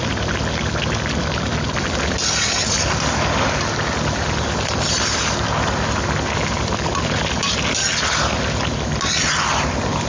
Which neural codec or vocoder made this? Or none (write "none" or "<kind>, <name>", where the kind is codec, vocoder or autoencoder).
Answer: none